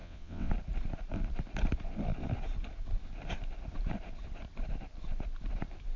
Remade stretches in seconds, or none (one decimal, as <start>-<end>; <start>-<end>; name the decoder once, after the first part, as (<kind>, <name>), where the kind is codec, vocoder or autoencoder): 0.0-0.5 (vocoder, WaveNeXt)